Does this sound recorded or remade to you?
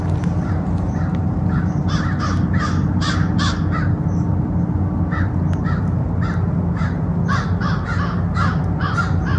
recorded